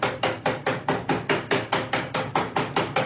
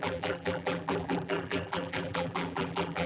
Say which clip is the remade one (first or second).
second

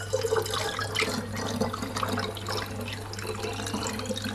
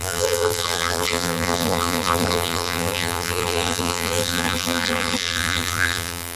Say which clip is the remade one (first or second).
second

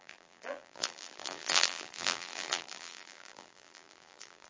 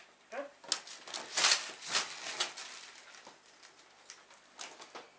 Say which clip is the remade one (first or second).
first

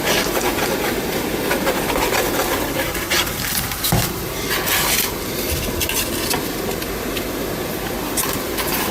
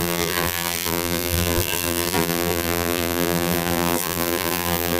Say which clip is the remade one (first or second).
second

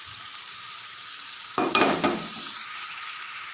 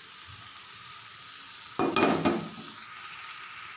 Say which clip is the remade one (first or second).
first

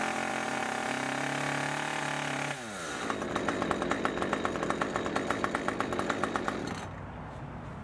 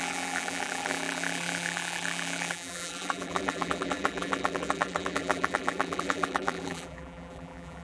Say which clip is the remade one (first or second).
second